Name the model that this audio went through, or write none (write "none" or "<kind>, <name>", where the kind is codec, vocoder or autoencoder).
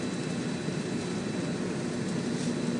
none